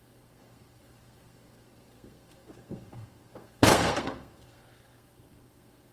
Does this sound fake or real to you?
fake